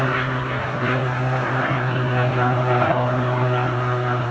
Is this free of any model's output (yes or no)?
no